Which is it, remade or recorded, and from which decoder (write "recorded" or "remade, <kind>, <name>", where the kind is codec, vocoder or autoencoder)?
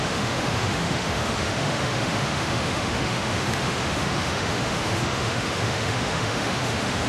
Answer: remade, autoencoder, DAC-VAE